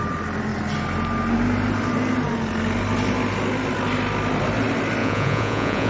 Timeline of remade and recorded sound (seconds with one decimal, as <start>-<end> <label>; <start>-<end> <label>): 0.0-5.0 recorded; 5.0-5.9 remade